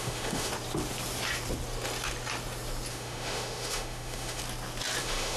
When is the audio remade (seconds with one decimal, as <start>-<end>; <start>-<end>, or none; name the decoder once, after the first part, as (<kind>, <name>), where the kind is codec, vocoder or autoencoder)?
0.0-0.5 (autoencoder, DAC-VAE); 2.9-4.4; 5.0-5.4